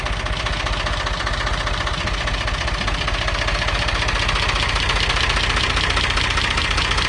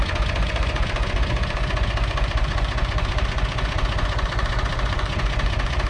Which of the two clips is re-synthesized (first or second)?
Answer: second